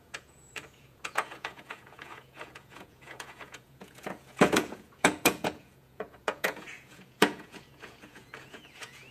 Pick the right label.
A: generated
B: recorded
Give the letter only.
A